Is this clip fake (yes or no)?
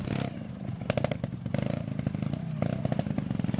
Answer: no